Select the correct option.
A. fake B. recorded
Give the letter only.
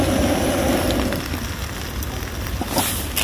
B